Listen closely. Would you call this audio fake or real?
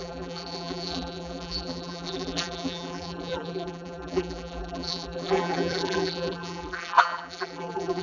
fake